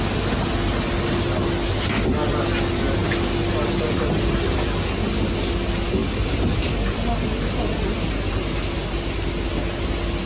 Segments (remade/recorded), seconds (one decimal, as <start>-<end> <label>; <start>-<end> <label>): 0.0-10.3 recorded